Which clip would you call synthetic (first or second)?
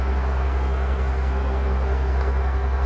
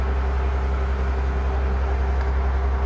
first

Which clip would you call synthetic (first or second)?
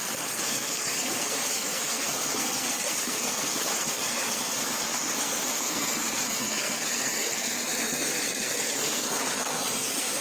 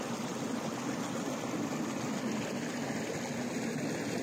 first